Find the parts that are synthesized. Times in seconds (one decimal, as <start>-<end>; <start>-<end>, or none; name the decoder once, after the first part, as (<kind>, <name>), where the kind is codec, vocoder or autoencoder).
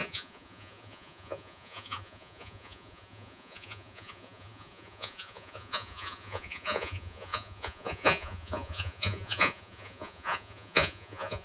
0.0-11.4 (vocoder, Vocos)